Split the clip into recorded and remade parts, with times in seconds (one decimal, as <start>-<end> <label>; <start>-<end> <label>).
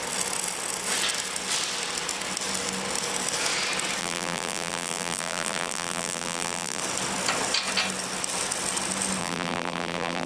0.0-4.0 recorded; 4.0-6.8 remade; 6.8-9.2 recorded; 9.2-10.3 remade